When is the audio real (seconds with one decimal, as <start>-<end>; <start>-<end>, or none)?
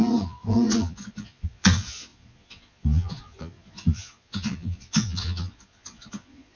none